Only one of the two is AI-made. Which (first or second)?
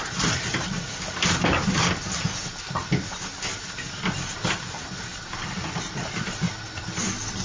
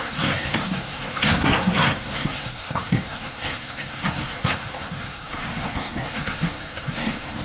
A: second